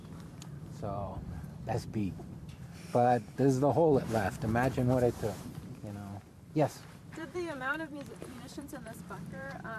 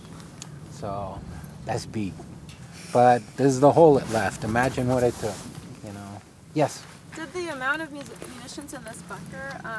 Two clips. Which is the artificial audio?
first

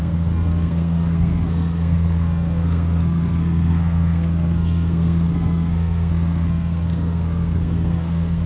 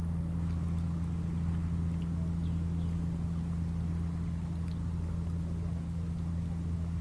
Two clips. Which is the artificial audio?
first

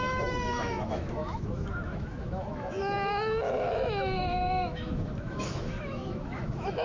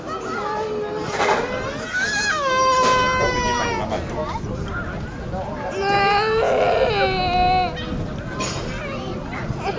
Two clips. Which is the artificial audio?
first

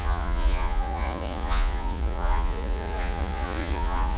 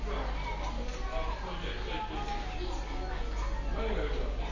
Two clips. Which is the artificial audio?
first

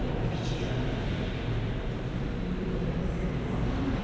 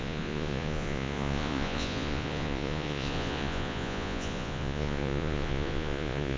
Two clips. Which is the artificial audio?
second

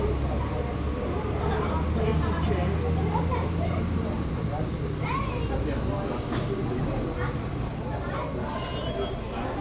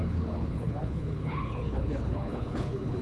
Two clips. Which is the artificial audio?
second